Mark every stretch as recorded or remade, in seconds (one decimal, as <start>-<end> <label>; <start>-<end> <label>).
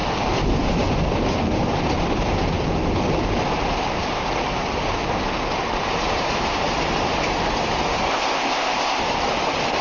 0.0-8.1 recorded; 8.1-9.0 remade; 9.0-9.8 recorded